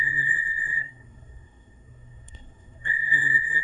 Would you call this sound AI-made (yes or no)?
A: yes